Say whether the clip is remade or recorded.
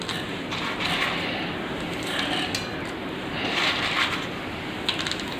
recorded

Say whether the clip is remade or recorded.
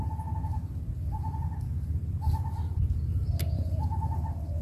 recorded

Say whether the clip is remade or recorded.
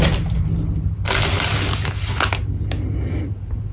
recorded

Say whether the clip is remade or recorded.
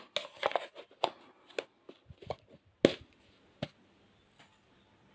recorded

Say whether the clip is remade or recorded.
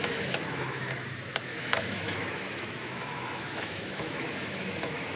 remade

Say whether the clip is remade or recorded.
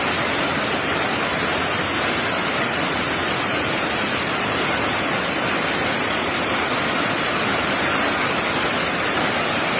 recorded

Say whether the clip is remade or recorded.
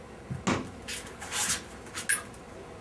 recorded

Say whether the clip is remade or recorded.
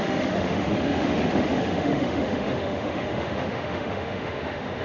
remade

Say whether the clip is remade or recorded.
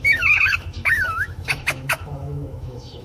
remade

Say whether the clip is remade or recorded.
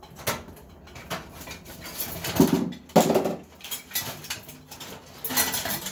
recorded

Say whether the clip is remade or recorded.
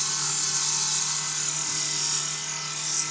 recorded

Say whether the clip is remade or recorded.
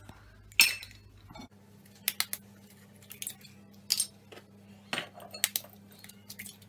recorded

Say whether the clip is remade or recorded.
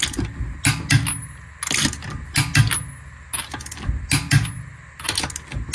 recorded